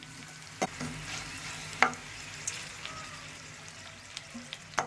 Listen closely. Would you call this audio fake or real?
real